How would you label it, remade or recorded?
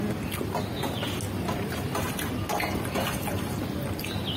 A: recorded